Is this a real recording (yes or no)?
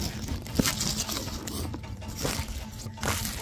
yes